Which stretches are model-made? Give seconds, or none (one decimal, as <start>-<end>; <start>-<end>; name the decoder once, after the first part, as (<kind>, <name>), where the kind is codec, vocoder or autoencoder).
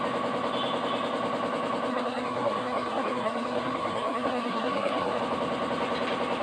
1.9-5.2 (codec, SNAC)